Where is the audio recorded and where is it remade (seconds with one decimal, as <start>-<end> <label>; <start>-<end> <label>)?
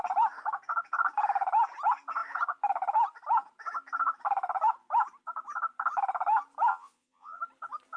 0.0-6.7 recorded; 6.7-7.4 remade; 7.4-8.0 recorded